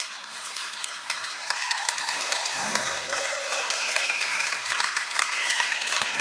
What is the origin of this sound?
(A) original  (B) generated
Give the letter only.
B